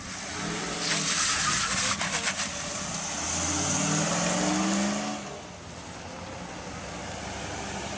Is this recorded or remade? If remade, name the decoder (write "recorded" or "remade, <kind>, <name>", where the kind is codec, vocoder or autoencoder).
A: recorded